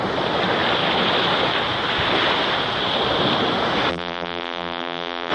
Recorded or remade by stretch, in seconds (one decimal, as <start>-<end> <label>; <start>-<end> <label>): 0.0-3.9 recorded; 3.9-5.3 remade